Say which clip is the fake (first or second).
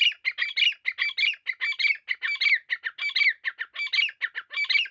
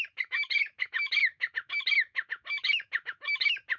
second